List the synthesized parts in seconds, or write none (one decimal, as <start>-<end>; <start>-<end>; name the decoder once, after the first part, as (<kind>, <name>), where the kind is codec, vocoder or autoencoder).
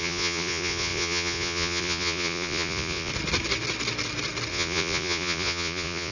0.0-3.1 (vocoder, Vocos); 4.5-6.1